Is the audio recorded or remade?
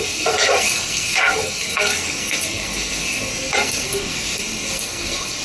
remade